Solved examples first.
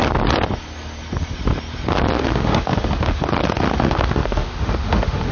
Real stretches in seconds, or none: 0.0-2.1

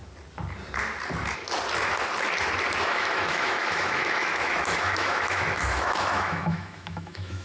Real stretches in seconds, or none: 0.0-2.8

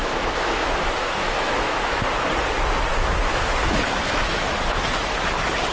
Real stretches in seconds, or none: 2.1-2.9; 4.5-5.7

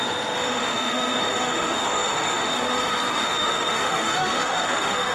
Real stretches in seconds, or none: none